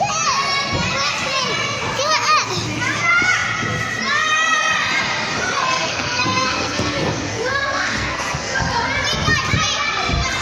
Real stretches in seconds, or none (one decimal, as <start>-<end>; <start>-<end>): 0.0-5.6; 8.7-10.4